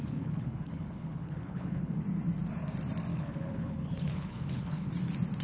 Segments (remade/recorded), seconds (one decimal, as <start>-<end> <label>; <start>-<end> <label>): 0.0-1.9 remade; 1.9-3.1 recorded; 3.1-4.9 remade; 4.9-5.4 recorded